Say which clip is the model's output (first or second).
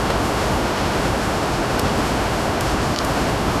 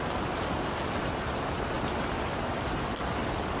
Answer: first